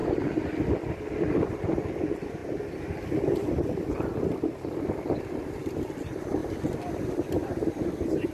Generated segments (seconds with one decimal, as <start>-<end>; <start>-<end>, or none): 0.7-2.4; 5.2-6.4; 6.9-8.3